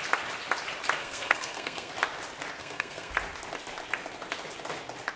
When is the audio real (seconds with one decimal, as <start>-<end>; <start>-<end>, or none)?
0.0-1.0; 1.9-2.6; 3.1-5.2